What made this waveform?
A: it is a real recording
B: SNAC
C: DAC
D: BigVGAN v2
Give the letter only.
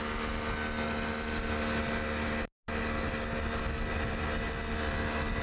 A